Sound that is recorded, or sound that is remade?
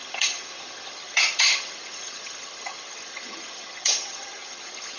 remade